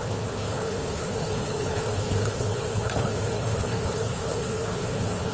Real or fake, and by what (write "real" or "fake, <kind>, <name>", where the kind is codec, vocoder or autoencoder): fake, codec, HILCodec